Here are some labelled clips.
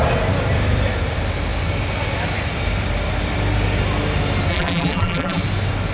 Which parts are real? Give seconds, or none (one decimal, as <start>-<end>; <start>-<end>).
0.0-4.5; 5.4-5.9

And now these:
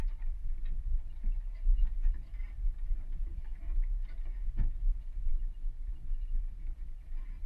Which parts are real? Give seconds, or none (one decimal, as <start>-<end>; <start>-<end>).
0.0-1.8; 3.6-7.5

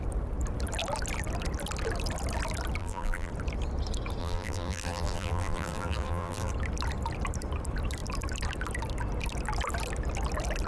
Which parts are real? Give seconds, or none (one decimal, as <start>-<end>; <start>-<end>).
0.0-2.8; 3.3-4.2; 6.5-10.7

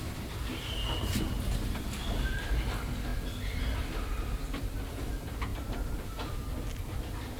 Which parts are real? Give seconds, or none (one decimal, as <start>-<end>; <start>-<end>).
0.0-5.5; 6.3-7.4

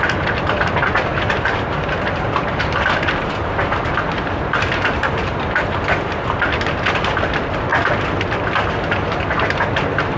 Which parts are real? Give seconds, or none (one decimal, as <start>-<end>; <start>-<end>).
0.0-1.1; 3.9-10.2

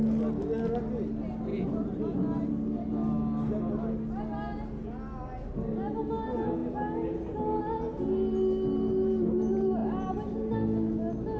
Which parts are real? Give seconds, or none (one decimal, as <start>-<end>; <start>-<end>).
0.0-1.5; 2.5-5.5; 6.0-11.4

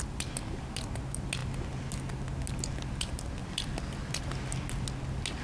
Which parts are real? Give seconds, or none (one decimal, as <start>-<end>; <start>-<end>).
0.0-3.4; 4.2-5.4